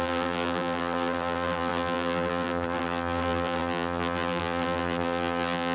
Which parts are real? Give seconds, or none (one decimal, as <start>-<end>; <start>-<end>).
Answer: none